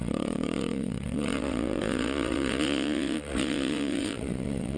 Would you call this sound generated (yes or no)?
yes